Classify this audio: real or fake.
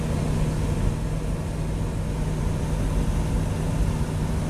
real